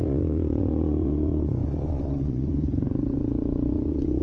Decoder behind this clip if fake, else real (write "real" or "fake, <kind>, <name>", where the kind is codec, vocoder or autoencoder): fake, vocoder, Vocos